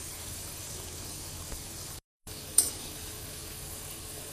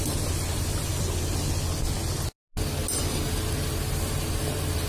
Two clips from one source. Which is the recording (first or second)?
second